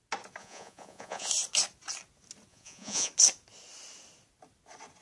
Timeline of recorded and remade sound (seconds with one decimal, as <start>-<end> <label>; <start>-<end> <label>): 0.0-0.4 recorded; 0.4-1.3 remade; 1.3-2.5 recorded; 2.5-3.1 remade; 3.1-5.0 recorded